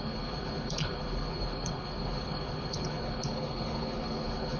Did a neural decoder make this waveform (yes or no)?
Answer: yes